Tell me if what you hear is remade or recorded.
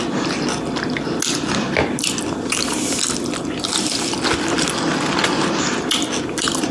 recorded